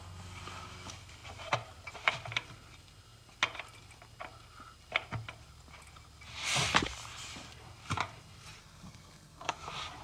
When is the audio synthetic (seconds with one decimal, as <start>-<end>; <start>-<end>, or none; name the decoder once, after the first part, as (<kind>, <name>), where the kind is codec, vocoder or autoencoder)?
8.6-9.5 (codec, SNAC)